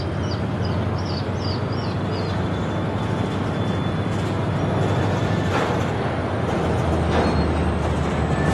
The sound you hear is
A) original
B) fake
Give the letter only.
A